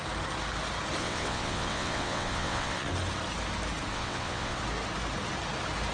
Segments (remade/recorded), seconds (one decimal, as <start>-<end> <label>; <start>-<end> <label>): 0.0-1.0 recorded; 1.0-2.9 remade; 2.9-3.9 recorded; 3.9-4.6 remade; 4.6-5.9 recorded